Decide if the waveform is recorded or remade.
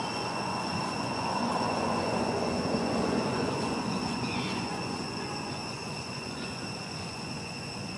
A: remade